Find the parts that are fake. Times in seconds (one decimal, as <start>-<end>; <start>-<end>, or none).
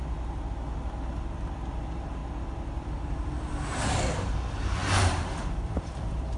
1.8-2.2; 3.1-6.4